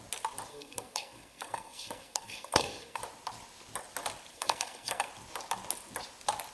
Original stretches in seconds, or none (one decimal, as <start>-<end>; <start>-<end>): 0.0-0.5; 3.0-4.3; 5.1-6.5